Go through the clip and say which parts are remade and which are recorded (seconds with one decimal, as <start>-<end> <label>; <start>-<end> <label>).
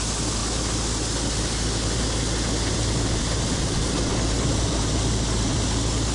0.0-0.4 remade; 0.4-3.2 recorded; 3.2-6.1 remade